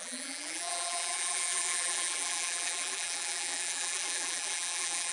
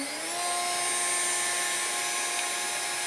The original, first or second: second